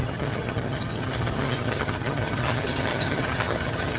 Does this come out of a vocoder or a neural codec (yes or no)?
yes